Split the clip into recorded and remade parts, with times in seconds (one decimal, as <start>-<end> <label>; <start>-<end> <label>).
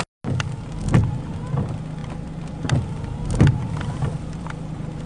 0.0-2.0 recorded; 2.0-5.1 remade